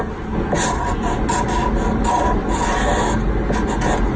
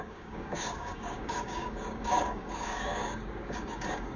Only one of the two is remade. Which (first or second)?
second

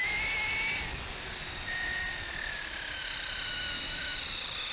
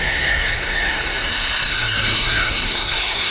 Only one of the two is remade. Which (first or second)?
second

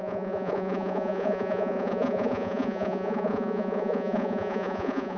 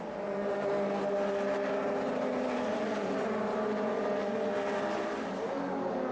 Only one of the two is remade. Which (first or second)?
first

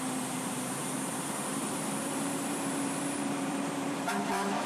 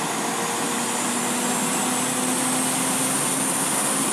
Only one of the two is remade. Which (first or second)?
first